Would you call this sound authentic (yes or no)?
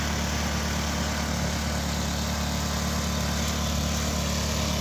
yes